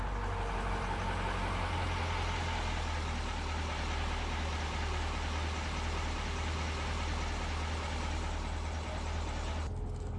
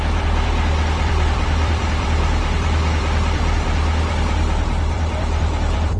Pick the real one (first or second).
first